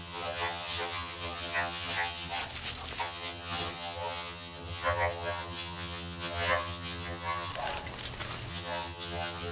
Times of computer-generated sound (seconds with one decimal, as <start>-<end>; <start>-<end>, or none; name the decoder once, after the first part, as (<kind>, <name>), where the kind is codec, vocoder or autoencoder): 0.0-2.4 (vocoder, HiFi-GAN); 3.0-7.5; 8.5-9.5